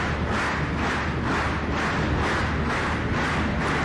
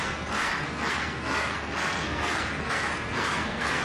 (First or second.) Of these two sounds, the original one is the first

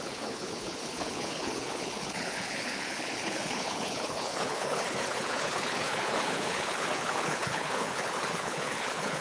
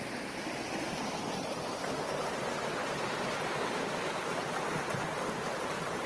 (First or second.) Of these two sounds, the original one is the second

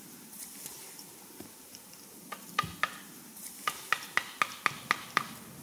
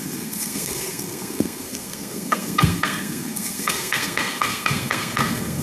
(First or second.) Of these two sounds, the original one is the first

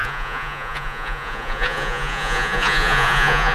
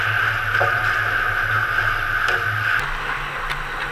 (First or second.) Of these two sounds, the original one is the second